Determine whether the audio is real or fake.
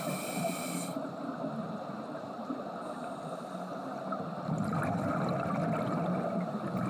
real